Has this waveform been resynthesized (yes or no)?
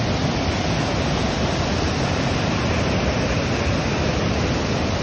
no